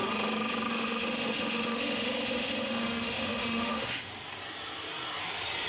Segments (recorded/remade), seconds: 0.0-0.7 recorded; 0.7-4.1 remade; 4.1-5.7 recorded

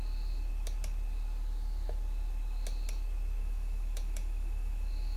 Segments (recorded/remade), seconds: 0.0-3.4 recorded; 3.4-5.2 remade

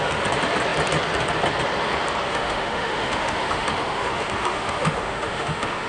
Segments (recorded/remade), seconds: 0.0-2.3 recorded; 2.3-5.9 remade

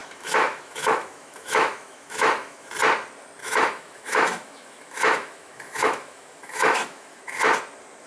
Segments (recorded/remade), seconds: 0.0-2.7 remade; 2.7-3.4 recorded; 3.4-7.2 remade; 7.2-8.1 recorded